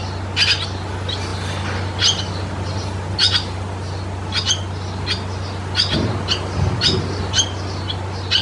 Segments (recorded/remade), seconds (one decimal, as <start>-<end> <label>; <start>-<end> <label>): 0.0-8.4 recorded